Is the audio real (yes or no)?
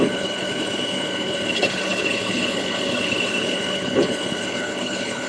no